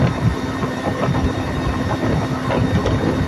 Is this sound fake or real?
fake